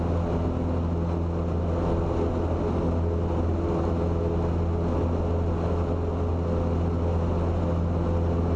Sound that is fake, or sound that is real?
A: real